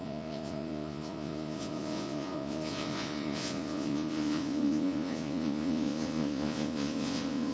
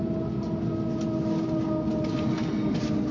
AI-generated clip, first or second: first